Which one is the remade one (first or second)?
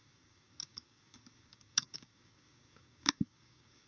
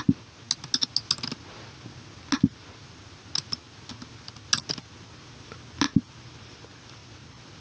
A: first